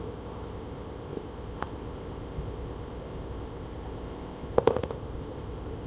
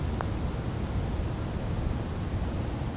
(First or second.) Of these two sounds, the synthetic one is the first